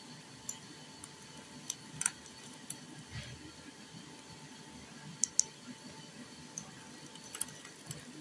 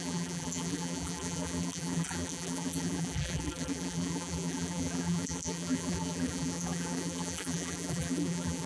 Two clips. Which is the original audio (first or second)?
first